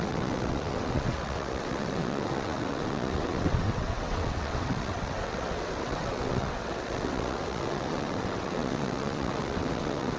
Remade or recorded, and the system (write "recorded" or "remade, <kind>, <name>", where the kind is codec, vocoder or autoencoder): remade, vocoder, WaveNeXt